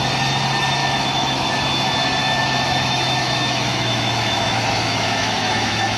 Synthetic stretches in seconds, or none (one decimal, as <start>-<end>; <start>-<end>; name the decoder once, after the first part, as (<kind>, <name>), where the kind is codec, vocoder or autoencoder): 0.8-1.5 (autoencoder, DAC-VAE); 2.2-6.0